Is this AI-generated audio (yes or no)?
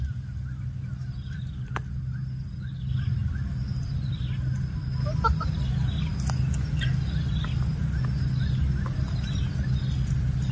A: no